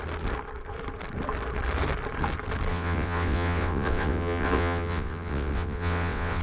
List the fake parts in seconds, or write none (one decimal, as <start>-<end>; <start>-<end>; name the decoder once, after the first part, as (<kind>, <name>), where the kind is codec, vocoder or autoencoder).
2.7-6.4 (vocoder, WaveNeXt)